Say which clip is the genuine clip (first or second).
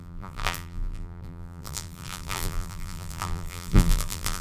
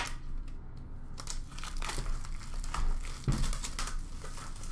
second